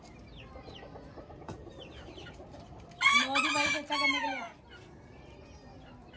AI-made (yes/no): no